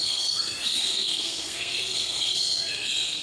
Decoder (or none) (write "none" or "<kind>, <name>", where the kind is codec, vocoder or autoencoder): codec, SNAC